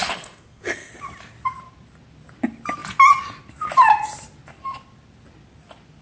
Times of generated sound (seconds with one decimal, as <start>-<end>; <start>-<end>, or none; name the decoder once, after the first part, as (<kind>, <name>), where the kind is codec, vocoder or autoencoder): 0.0-0.9 (codec, SNAC)